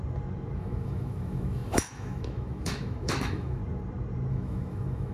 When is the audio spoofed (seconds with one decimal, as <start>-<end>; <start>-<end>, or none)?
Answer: 0.6-3.6; 4.3-5.1